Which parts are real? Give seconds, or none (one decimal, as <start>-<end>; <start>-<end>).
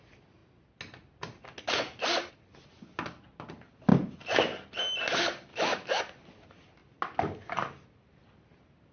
0.0-5.5; 6.0-8.9